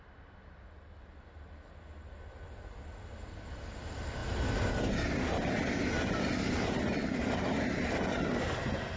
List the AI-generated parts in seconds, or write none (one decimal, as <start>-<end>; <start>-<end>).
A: none